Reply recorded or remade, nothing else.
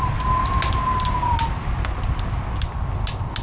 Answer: recorded